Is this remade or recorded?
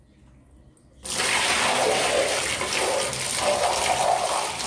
recorded